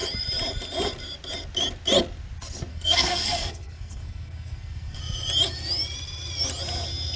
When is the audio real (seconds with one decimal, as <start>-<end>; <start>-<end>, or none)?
0.0-2.7; 5.0-7.2